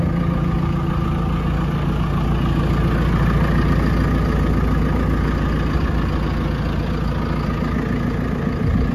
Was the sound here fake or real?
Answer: real